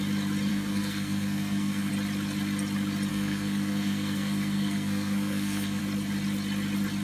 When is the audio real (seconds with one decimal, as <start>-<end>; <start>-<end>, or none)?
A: 0.0-0.5; 1.9-3.1; 5.8-7.0